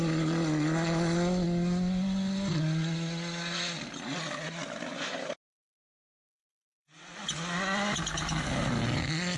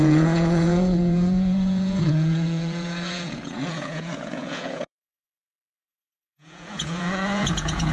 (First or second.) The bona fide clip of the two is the first